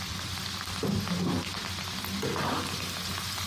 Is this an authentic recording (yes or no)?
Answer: yes